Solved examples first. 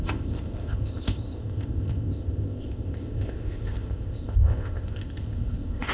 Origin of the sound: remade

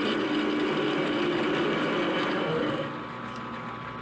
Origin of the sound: recorded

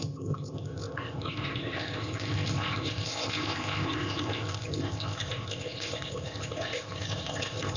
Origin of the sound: remade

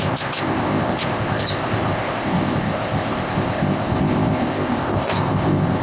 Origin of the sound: remade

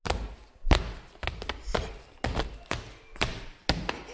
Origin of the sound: recorded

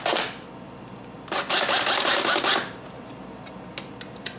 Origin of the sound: recorded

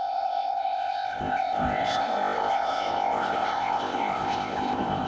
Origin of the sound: remade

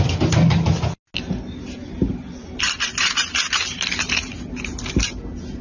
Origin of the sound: recorded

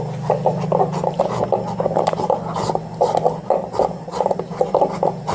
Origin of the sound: recorded